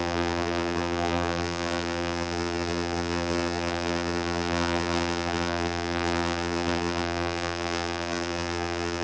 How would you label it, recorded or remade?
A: remade